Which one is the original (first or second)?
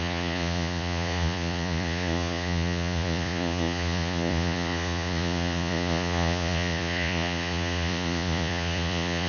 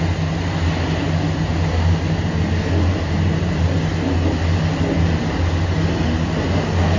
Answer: second